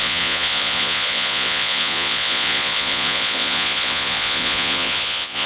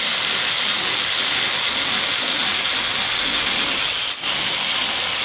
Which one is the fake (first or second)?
first